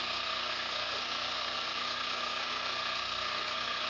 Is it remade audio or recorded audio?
remade